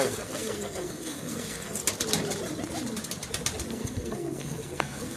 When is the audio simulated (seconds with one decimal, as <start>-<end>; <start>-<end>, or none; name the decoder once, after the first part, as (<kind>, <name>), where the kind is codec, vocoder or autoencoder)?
0.0-1.8 (codec, SNAC); 3.7-5.2